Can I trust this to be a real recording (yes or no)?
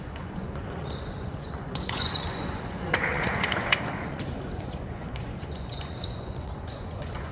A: no